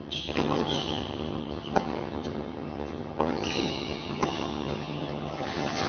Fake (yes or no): yes